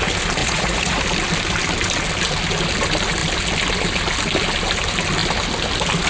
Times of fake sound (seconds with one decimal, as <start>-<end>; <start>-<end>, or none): 0.4-1.0